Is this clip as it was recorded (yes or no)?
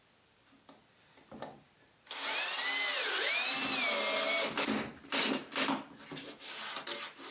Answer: yes